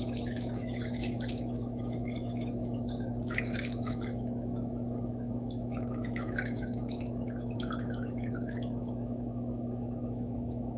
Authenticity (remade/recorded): remade